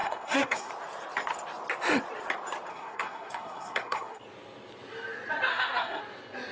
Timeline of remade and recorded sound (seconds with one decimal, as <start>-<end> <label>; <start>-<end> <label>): 0.0-0.7 remade; 0.7-2.7 recorded; 2.7-4.2 remade; 4.2-5.5 recorded; 5.5-6.0 remade; 6.0-6.5 recorded